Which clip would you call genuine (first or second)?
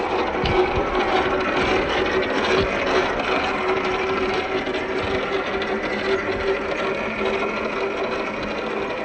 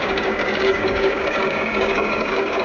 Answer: first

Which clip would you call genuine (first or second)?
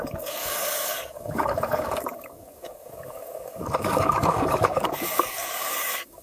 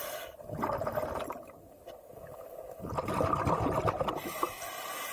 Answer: second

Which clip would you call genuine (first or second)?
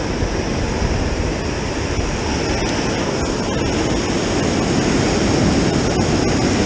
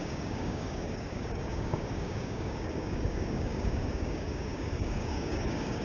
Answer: first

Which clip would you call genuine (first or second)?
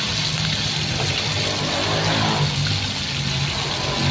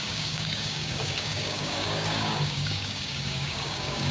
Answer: first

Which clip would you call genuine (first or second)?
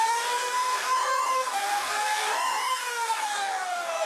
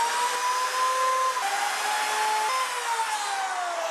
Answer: second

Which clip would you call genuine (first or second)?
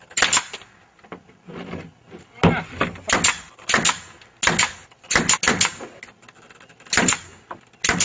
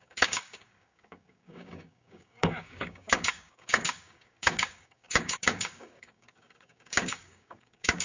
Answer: first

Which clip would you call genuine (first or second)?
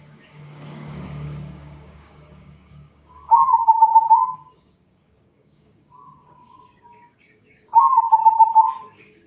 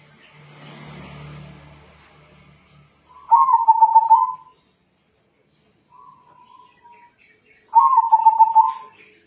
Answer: second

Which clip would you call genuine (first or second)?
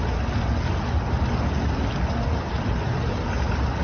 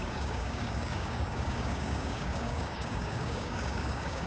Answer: first